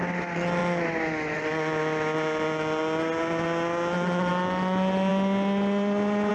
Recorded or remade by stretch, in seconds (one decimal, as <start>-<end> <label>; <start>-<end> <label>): 0.0-6.3 recorded